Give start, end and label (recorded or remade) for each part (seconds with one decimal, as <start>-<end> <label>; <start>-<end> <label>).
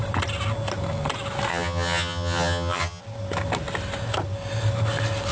0.0-1.5 recorded; 1.5-3.0 remade; 3.0-5.3 recorded